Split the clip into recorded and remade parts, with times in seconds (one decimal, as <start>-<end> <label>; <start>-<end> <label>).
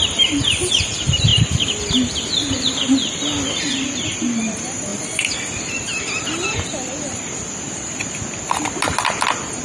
0.0-9.6 remade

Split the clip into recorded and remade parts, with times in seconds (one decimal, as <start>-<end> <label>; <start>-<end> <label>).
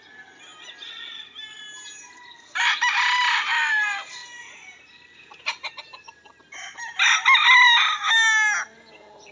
0.0-9.3 recorded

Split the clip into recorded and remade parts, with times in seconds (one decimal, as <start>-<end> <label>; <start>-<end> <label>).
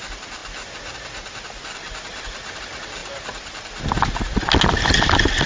0.0-5.5 recorded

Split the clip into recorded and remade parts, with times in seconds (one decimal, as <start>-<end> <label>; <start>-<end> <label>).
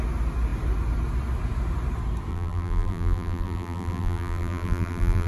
0.0-2.3 recorded; 2.3-5.3 remade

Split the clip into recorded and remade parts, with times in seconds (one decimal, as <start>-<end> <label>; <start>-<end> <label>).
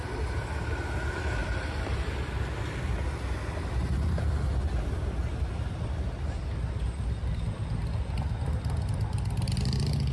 0.0-1.4 recorded; 1.4-2.3 remade; 2.3-10.1 recorded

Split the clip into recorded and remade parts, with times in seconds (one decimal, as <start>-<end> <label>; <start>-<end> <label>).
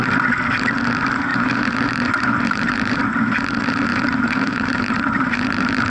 0.0-1.3 recorded; 1.3-3.0 remade; 3.0-3.9 recorded; 3.9-5.9 remade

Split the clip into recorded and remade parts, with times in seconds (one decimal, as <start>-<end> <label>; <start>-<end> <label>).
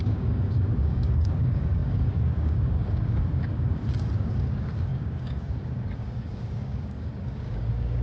0.0-8.0 remade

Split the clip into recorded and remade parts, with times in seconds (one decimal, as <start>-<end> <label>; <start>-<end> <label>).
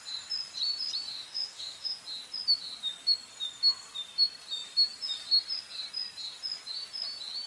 0.0-1.1 recorded; 1.1-2.0 remade; 2.0-7.5 recorded